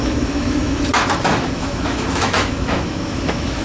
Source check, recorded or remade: remade